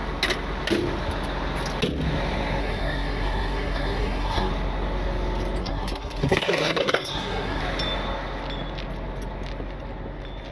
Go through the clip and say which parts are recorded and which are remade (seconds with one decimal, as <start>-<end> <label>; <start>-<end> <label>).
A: 0.0-2.6 recorded; 2.6-4.5 remade; 4.5-5.6 recorded; 5.6-7.6 remade; 7.6-10.5 recorded